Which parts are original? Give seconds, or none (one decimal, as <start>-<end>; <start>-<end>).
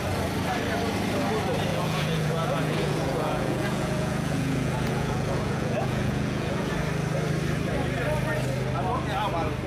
0.0-1.7; 6.7-9.7